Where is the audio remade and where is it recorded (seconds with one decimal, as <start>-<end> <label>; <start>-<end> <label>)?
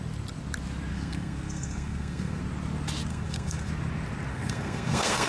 0.0-0.9 recorded; 0.9-2.4 remade; 2.4-3.1 recorded; 3.1-3.7 remade; 3.7-4.3 recorded; 4.3-5.3 remade